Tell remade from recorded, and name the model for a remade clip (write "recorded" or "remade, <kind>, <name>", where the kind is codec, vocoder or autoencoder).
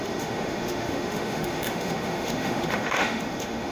remade, autoencoder, DAC-VAE